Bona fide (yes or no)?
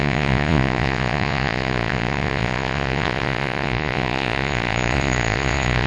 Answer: no